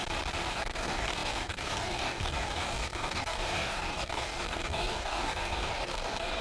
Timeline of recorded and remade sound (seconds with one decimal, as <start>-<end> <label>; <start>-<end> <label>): 0.0-0.5 recorded; 0.5-6.4 remade